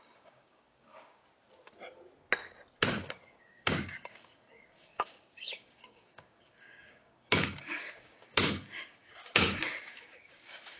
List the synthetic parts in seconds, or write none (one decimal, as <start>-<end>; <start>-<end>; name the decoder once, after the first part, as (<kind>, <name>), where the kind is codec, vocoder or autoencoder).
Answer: 0.0-1.2 (codec, DAC); 3.1-10.8